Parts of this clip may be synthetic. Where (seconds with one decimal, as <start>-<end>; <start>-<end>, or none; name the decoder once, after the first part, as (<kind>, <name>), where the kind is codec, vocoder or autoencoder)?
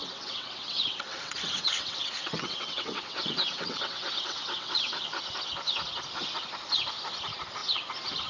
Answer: 0.0-5.0 (vocoder, WaveNeXt)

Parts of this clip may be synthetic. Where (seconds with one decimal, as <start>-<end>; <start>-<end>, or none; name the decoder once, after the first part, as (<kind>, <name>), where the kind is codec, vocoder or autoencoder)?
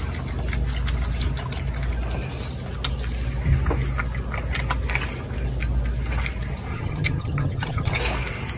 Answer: 6.7-8.0 (vocoder, HiFi-GAN)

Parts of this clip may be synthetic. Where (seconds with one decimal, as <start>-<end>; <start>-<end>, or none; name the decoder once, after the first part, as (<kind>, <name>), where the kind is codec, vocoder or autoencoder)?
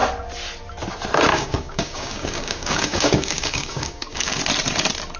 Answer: 1.3-4.4 (codec, DAC)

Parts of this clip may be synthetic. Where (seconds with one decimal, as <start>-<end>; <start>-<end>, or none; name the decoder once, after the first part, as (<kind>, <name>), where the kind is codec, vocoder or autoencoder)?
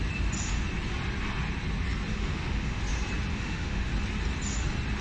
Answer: 2.1-2.8 (autoencoder, DAC-VAE); 3.3-3.9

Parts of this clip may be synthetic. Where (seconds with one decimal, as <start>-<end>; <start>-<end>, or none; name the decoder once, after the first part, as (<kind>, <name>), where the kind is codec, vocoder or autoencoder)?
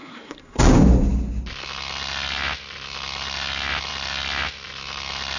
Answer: 0.0-0.6 (codec, SNAC)